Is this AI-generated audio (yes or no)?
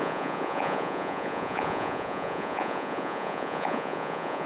yes